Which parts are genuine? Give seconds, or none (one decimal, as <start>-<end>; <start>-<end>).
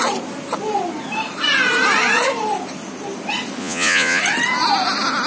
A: 0.0-3.6; 4.2-5.3